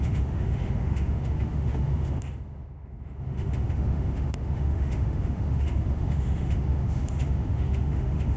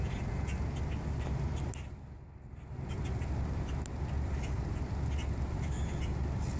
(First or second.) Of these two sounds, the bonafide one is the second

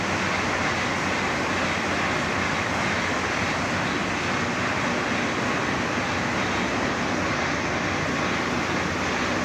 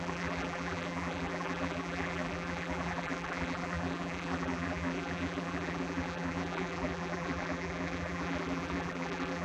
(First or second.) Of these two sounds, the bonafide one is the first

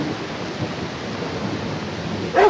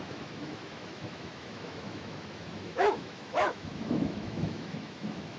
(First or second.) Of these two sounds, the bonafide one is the first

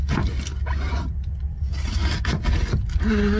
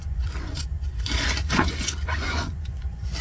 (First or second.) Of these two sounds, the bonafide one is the first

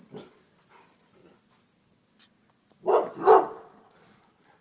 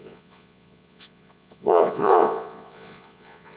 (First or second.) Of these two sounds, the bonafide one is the first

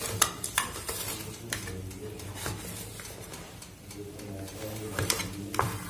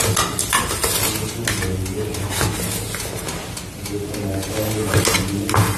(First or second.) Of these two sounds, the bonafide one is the second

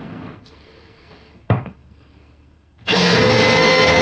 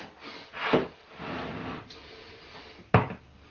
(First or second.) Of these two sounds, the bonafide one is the second